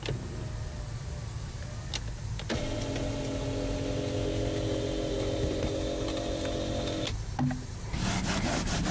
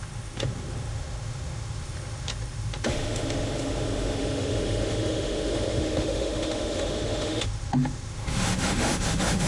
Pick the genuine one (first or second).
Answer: first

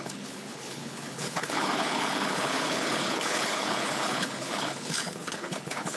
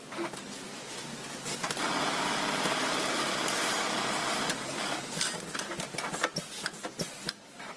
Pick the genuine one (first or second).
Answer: second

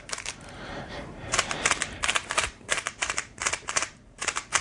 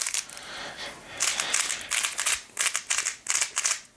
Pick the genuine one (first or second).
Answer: second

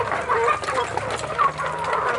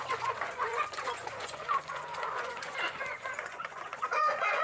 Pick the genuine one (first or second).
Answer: first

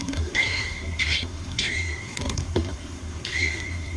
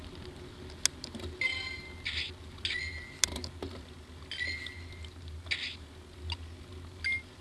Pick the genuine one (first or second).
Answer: second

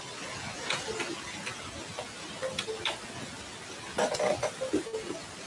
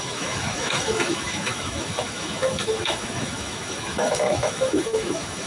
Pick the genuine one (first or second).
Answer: first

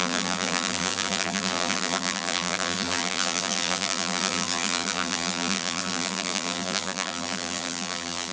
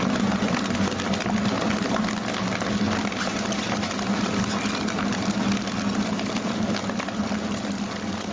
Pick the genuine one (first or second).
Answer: second